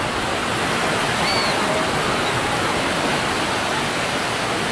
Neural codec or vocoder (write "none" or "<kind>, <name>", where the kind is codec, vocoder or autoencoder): none